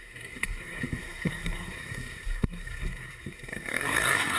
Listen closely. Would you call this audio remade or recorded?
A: remade